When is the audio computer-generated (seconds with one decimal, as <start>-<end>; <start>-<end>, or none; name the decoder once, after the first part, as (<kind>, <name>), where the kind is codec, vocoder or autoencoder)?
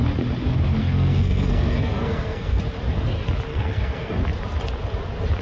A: 0.8-2.6 (codec, SNAC); 3.5-4.1